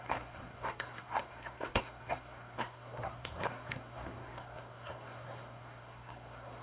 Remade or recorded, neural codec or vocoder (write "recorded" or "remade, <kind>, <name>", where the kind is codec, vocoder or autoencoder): remade, codec, SNAC